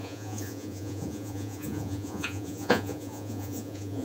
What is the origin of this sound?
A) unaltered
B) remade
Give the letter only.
B